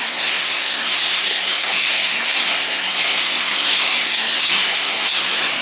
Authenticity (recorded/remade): remade